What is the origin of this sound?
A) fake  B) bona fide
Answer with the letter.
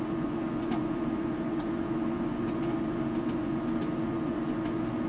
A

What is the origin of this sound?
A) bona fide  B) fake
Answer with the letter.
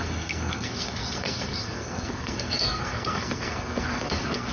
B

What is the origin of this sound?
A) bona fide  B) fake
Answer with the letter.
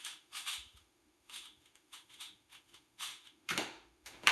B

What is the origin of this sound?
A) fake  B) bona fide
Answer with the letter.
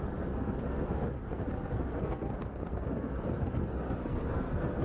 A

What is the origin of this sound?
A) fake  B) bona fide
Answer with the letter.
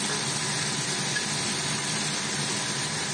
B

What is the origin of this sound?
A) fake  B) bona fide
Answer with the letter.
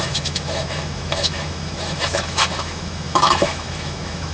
A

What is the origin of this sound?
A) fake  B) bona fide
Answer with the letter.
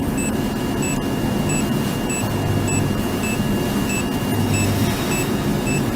B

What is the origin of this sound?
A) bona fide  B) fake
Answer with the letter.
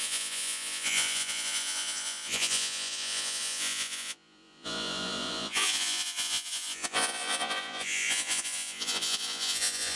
B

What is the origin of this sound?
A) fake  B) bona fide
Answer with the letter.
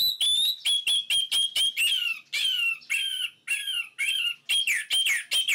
B